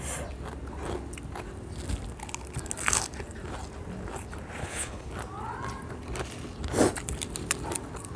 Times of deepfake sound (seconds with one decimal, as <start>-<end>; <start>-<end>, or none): 4.6-5.1